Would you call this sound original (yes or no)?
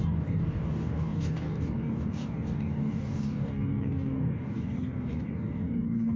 no